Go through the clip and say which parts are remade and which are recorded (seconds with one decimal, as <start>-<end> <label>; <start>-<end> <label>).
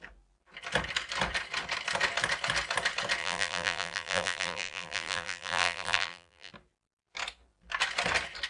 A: 0.0-3.2 recorded; 3.2-6.5 remade; 6.5-8.5 recorded